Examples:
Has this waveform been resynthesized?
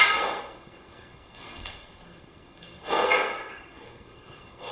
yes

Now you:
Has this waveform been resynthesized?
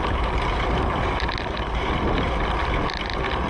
no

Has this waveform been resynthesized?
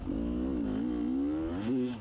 no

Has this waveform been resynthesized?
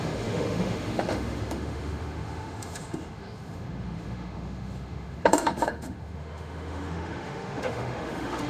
yes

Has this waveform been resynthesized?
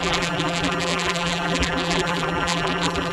yes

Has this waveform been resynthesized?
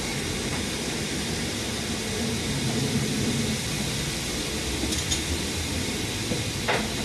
no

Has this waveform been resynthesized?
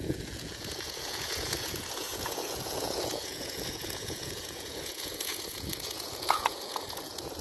yes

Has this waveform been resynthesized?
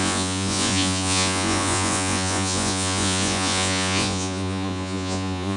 yes